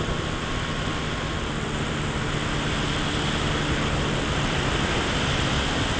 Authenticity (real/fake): real